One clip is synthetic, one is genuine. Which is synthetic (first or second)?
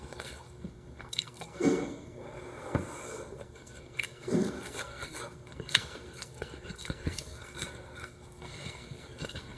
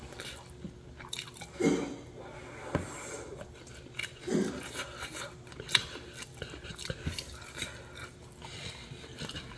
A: first